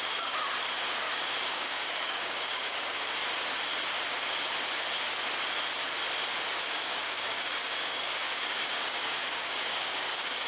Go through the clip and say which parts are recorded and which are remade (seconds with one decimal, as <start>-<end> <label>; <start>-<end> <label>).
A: 0.0-0.4 remade; 0.4-1.5 recorded; 1.5-3.2 remade; 3.2-6.6 recorded; 6.6-10.5 remade